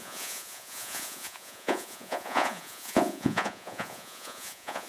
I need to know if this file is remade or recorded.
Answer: remade